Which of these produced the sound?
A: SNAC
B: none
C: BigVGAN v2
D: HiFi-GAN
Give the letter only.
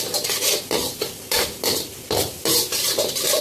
B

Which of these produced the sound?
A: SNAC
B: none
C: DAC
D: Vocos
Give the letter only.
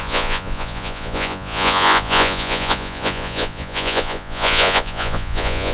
D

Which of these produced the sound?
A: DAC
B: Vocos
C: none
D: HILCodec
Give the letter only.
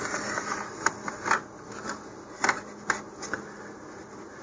C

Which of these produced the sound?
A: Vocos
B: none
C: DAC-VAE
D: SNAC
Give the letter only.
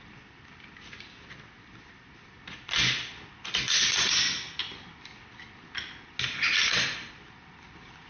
B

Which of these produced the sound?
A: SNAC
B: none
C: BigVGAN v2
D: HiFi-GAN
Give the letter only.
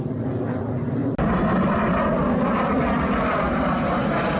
B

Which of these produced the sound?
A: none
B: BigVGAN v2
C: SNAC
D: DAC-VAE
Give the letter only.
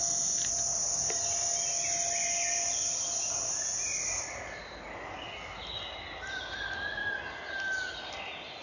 A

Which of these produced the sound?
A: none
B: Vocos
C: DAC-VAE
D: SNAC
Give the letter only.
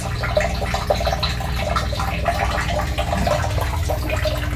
A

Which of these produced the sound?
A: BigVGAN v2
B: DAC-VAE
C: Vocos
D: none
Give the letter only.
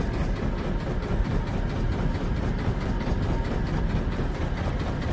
D